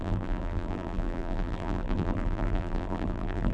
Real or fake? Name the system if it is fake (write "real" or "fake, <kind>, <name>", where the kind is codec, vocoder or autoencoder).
fake, vocoder, BigVGAN v2